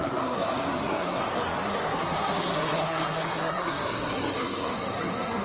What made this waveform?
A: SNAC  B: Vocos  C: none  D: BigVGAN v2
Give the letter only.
A